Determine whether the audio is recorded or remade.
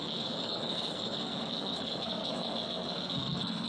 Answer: remade